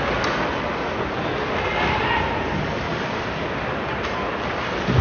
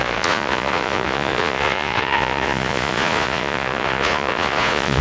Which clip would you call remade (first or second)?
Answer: second